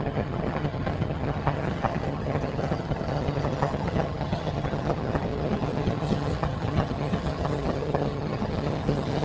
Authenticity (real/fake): fake